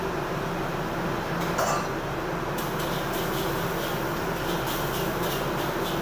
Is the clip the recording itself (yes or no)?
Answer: yes